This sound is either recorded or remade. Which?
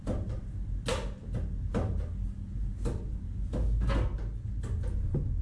recorded